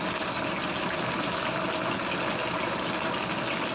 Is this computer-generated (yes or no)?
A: no